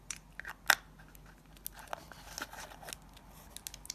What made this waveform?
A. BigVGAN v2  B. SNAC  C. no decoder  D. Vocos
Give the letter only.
C